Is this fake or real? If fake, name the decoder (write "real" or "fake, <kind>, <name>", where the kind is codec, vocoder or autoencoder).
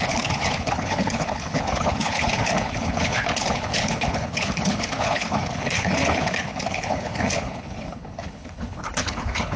fake, codec, HILCodec